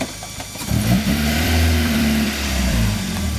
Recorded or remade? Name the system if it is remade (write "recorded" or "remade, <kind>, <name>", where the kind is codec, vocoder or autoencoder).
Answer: remade, vocoder, BigVGAN v2